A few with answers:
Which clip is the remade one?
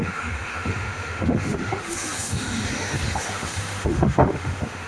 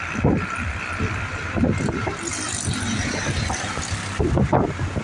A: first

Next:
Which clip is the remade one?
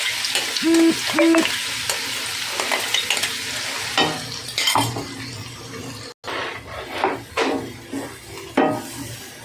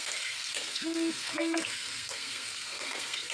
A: second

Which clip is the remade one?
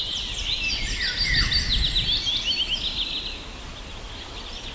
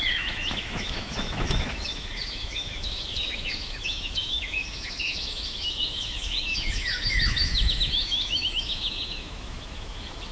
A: second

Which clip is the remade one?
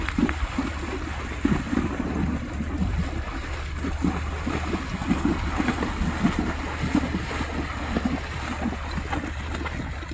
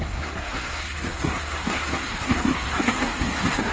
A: second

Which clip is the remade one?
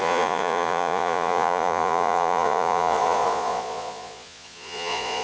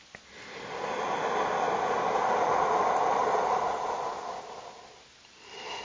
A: first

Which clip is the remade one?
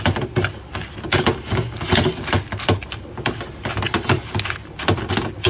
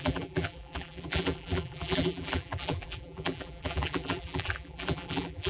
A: second